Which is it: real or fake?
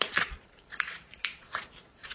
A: fake